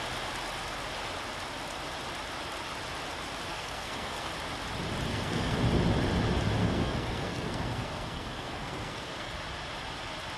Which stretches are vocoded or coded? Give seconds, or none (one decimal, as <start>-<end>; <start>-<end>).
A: 3.5-4.3; 5.1-5.6; 6.6-9.3